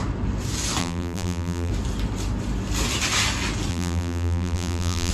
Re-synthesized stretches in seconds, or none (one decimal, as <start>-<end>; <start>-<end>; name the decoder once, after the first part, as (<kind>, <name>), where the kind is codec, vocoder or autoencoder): 0.8-1.7 (vocoder, BigVGAN v2); 3.7-5.1